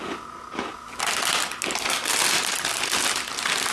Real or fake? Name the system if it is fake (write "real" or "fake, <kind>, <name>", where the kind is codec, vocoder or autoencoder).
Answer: real